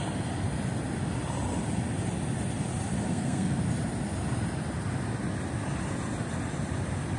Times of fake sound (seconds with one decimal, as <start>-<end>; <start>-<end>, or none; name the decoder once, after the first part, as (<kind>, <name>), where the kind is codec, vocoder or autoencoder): 3.1-3.6 (codec, SNAC)